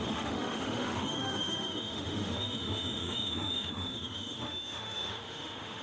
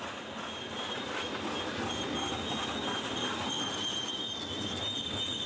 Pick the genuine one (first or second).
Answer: second